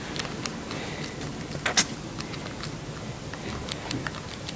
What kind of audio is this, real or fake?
real